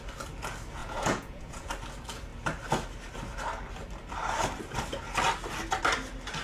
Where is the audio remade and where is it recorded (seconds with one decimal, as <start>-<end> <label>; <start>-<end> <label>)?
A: 0.0-0.8 recorded; 0.8-1.7 remade; 1.7-6.4 recorded